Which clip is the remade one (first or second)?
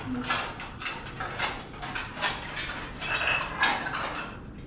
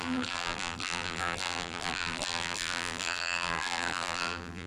second